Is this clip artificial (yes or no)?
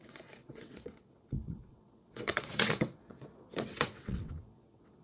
yes